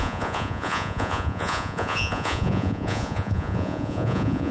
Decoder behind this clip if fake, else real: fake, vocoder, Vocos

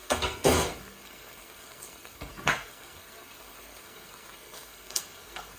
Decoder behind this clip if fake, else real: fake, codec, SNAC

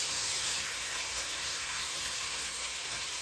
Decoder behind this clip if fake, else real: fake, codec, SNAC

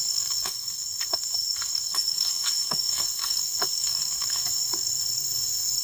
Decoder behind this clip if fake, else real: fake, codec, SNAC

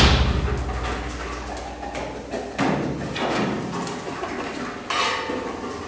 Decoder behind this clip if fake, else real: real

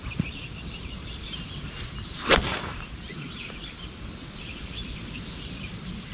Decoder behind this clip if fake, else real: fake, vocoder, BigVGAN v2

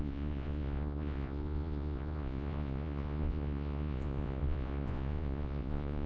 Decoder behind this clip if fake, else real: fake, vocoder, Vocos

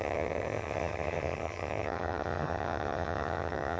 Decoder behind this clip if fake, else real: fake, vocoder, HiFi-GAN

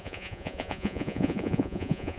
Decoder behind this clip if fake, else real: fake, vocoder, Vocos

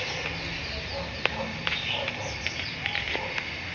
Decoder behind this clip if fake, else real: real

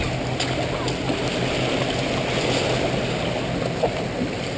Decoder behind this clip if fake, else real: real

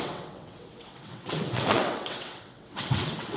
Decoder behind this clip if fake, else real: fake, vocoder, WaveNeXt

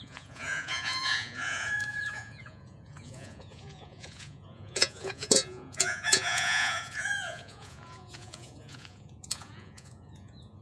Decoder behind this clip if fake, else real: fake, vocoder, Vocos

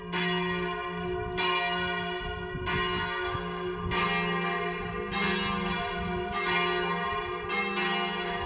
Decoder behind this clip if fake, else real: real